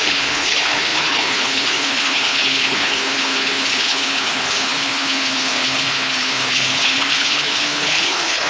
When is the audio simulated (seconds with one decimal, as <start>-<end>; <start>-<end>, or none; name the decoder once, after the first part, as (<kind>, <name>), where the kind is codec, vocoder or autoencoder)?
0.0-8.5 (codec, HILCodec)